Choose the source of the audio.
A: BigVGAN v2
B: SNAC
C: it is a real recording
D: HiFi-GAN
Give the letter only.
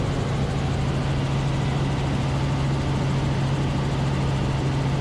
C